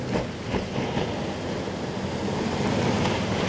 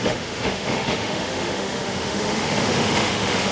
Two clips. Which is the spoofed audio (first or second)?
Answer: second